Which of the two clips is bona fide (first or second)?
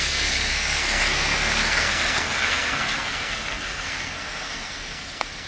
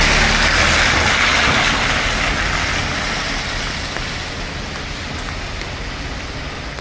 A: second